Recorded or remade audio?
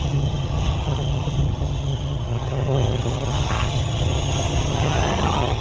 remade